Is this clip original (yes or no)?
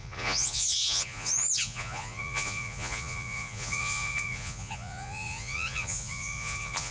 no